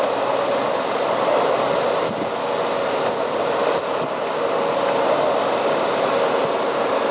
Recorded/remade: recorded